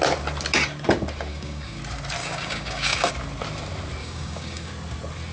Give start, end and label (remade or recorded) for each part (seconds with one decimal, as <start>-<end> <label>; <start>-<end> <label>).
0.0-1.3 recorded; 1.3-1.8 remade; 1.8-2.2 recorded; 2.2-3.1 remade; 3.1-4.0 recorded; 4.0-4.7 remade; 4.7-5.3 recorded